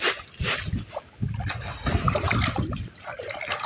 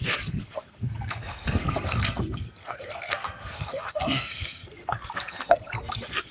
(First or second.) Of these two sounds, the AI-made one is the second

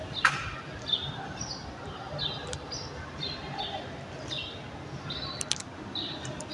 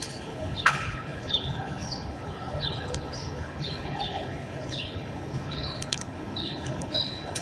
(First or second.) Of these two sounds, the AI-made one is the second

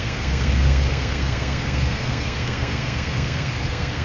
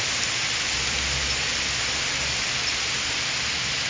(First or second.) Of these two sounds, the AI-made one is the first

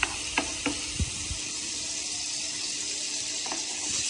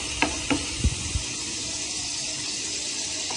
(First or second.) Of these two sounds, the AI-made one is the second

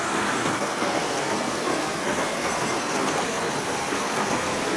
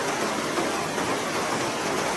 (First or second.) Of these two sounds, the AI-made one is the first